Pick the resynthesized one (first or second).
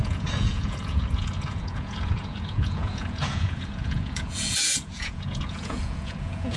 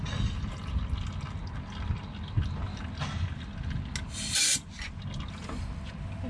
first